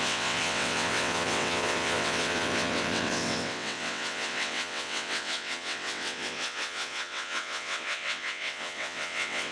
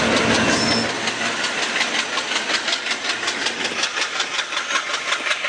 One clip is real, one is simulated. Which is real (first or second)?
second